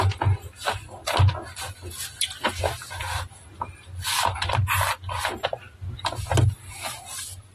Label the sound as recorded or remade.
recorded